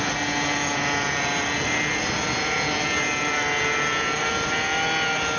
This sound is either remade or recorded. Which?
recorded